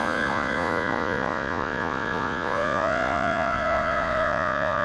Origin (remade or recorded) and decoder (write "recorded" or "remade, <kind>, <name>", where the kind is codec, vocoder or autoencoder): remade, vocoder, Vocos